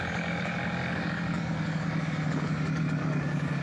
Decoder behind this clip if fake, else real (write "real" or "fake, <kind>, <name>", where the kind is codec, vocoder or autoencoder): fake, codec, DAC